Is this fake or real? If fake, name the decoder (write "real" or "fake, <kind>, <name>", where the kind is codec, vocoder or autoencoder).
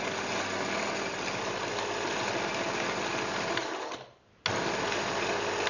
real